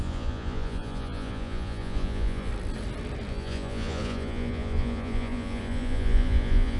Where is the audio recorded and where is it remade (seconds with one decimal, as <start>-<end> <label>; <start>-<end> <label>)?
0.0-2.5 remade; 2.5-3.3 recorded; 3.3-6.8 remade